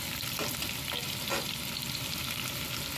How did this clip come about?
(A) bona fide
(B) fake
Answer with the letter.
A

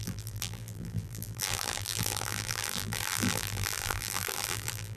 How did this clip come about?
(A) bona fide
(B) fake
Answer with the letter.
B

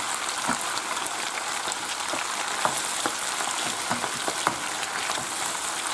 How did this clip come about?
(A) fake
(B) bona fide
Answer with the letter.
B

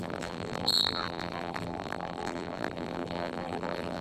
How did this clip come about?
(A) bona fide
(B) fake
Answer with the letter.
B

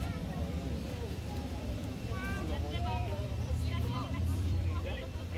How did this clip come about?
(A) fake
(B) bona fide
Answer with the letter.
A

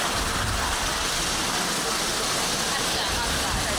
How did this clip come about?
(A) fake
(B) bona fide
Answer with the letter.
B